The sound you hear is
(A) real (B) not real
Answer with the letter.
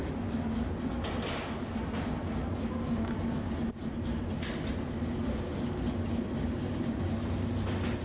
A